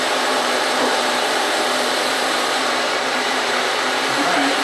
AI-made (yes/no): yes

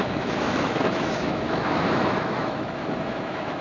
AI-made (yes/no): yes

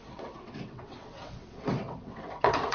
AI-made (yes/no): yes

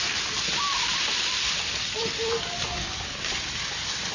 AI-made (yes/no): yes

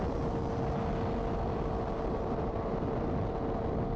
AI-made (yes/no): no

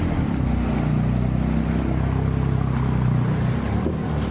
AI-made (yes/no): no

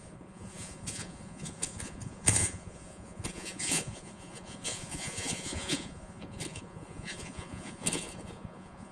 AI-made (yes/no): yes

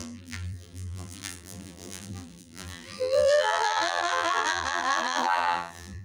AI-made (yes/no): yes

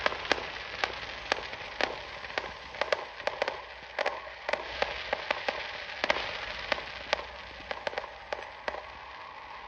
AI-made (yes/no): no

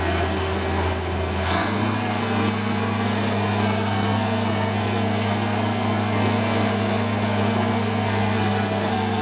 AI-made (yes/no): yes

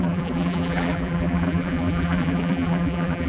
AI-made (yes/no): yes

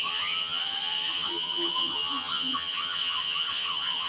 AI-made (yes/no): yes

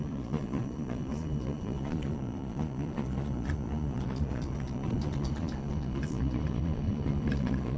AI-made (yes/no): yes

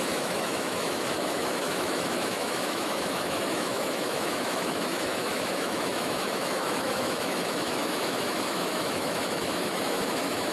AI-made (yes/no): yes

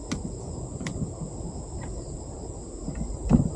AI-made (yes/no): no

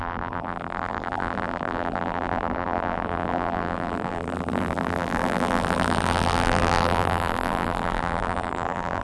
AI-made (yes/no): yes